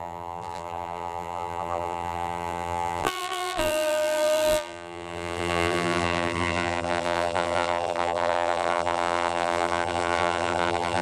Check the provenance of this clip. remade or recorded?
remade